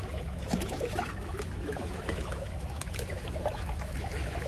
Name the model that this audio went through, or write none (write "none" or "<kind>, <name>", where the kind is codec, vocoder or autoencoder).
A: autoencoder, DAC-VAE